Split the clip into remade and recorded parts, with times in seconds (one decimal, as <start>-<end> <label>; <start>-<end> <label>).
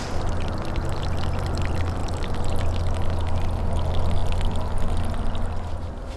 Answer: 0.0-6.2 recorded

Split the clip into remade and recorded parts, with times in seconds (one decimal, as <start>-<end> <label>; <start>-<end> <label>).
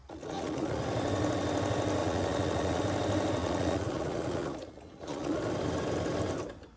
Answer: 0.0-0.8 remade; 0.8-2.0 recorded; 2.0-2.8 remade; 2.8-3.4 recorded; 3.4-5.4 remade; 5.4-6.8 recorded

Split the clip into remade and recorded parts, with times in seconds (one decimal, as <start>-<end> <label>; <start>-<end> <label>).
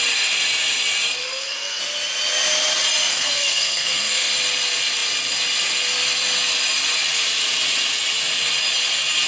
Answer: 0.0-1.2 recorded; 1.2-1.8 remade; 1.8-3.1 recorded; 3.1-4.3 remade; 4.3-9.3 recorded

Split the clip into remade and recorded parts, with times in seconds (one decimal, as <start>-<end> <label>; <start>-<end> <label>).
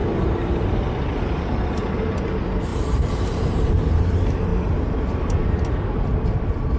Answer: 0.0-0.9 remade; 0.9-2.7 recorded; 2.7-4.0 remade; 4.0-4.5 recorded; 4.5-5.2 remade; 5.2-6.8 recorded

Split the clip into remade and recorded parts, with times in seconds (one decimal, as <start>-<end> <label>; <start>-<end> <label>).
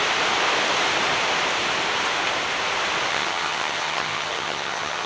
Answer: 0.0-3.1 recorded; 3.1-5.1 remade